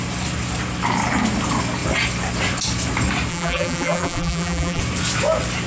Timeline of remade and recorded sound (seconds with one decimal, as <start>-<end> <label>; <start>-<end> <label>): 0.0-3.3 recorded; 3.3-4.8 remade; 4.8-5.7 recorded